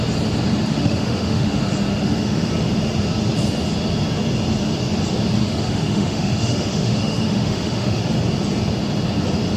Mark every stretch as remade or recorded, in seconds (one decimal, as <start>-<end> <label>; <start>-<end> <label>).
0.0-0.7 recorded; 0.7-1.6 remade; 1.6-2.0 recorded; 2.0-2.5 remade; 2.5-5.4 recorded; 5.4-8.0 remade; 8.0-9.6 recorded